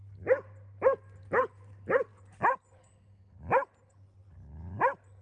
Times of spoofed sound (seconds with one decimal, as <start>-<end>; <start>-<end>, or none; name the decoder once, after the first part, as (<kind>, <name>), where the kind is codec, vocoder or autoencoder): none